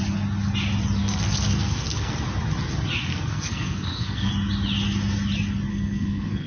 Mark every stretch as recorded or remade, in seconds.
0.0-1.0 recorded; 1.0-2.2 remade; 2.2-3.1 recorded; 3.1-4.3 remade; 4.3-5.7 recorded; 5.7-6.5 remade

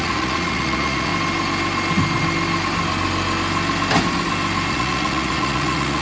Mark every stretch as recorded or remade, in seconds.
0.0-1.1 remade; 1.1-4.7 recorded; 4.7-6.0 remade